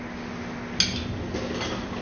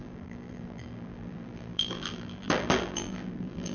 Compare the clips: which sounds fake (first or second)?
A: second